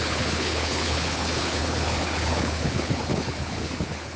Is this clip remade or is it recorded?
remade